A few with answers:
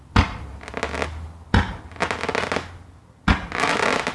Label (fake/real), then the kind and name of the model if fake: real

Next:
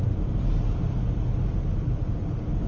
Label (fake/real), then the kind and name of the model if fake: real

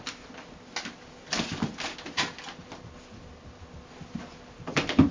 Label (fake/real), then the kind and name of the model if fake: real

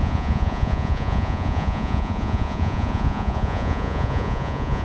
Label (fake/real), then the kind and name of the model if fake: fake, vocoder, Vocos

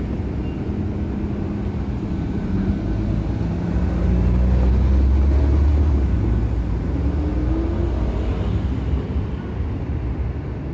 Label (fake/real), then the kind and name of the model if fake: real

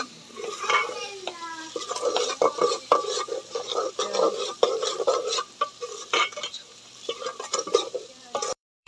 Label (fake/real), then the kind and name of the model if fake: fake, vocoder, BigVGAN v2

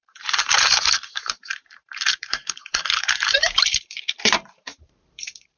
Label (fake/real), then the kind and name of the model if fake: fake, vocoder, BigVGAN v2